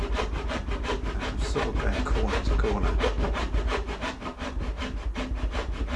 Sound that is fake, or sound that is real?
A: real